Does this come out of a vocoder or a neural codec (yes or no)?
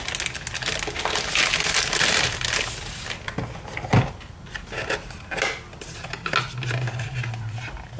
no